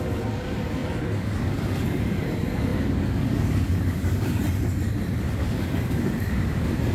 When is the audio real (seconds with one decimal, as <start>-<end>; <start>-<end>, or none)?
4.4-5.2